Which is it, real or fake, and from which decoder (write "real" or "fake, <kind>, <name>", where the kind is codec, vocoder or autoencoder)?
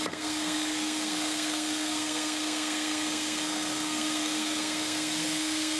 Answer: fake, codec, SNAC